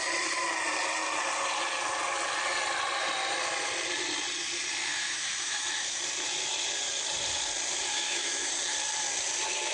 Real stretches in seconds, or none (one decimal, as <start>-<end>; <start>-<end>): 0.0-4.8; 6.0-7.9; 8.5-9.7